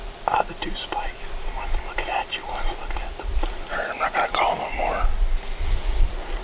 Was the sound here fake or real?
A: real